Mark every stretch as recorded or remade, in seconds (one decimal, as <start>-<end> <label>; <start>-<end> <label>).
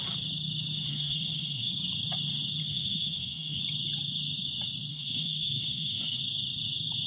0.0-0.9 recorded; 0.9-1.7 remade; 1.7-2.6 recorded; 2.6-3.6 remade; 3.6-4.9 recorded; 4.9-6.2 remade; 6.2-7.1 recorded